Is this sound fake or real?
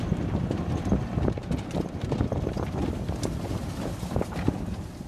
real